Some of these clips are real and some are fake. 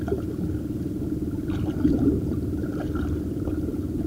real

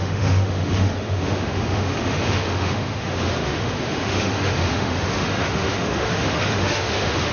fake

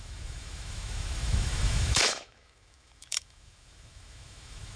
fake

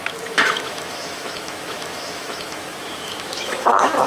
fake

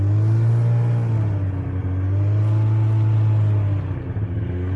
real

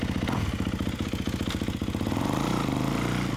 real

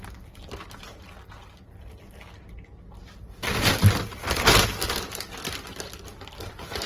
real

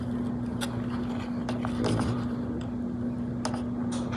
real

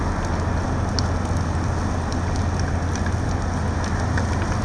real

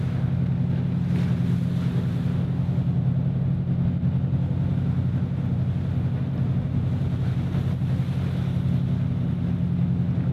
real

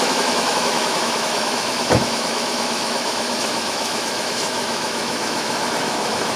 fake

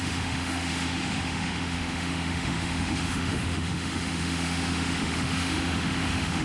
fake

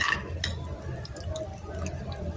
real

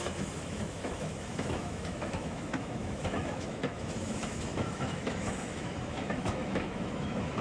fake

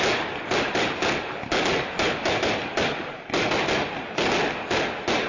real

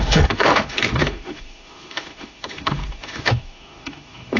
fake